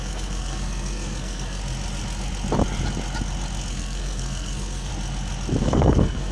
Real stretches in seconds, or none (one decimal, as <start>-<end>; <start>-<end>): 1.6-3.7; 4.9-5.6

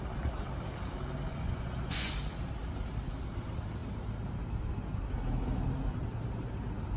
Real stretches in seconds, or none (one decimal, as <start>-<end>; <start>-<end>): 0.0-1.3; 2.1-7.0

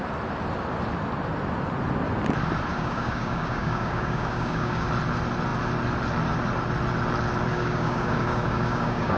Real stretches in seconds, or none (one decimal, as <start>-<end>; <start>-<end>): 0.0-2.7; 4.9-7.5

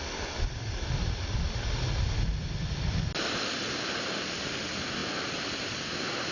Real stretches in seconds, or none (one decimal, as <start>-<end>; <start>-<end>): 0.0-6.3